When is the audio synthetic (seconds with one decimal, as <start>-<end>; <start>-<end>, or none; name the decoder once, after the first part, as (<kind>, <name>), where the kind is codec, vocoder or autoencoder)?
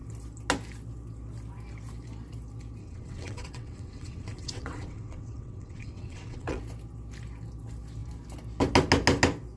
2.8-6.6 (vocoder, WaveNeXt)